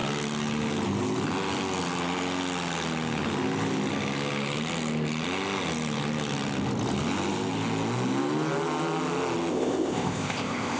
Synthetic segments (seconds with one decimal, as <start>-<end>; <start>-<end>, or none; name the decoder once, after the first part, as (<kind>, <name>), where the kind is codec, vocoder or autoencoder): 9.5-10.8 (codec, ZipCodec)